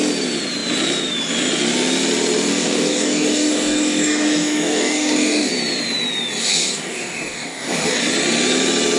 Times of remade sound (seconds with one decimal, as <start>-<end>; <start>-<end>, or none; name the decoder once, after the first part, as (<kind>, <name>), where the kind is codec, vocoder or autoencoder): 2.5-5.5 (codec, DAC); 6.4-8.0